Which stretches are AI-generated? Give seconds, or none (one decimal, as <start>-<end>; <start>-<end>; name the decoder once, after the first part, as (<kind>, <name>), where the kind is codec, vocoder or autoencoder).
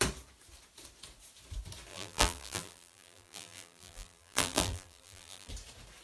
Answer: 1.9-5.5 (vocoder, BigVGAN v2)